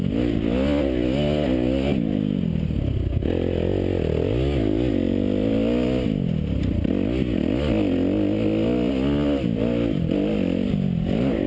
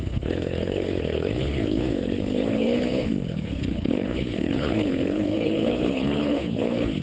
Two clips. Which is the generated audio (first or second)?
second